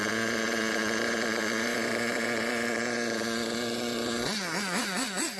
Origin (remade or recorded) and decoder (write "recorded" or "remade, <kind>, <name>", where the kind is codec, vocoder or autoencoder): remade, vocoder, Vocos